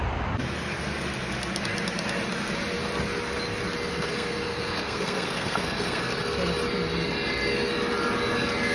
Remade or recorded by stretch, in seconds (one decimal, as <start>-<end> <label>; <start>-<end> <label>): 0.0-3.9 recorded; 3.9-6.0 remade; 6.0-8.7 recorded